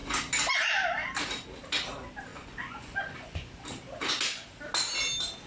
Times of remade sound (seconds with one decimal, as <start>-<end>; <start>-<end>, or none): 2.3-3.5